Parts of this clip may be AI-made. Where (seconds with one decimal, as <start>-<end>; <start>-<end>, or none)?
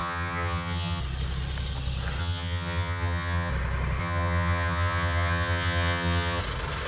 0.0-1.0; 2.2-3.5; 4.0-6.4